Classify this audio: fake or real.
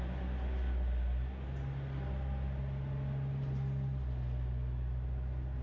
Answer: real